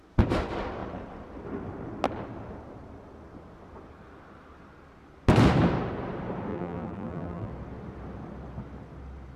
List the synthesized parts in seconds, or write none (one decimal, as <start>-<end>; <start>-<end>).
6.5-7.5